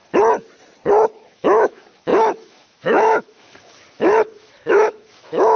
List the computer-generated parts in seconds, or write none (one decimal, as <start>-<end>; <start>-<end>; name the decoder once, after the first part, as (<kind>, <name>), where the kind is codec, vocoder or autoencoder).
0.9-5.6 (autoencoder, DAC-VAE)

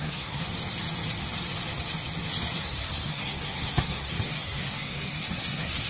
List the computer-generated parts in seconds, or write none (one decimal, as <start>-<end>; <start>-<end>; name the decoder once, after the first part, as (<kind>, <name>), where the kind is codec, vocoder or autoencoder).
0.0-0.4 (codec, SNAC); 2.6-5.9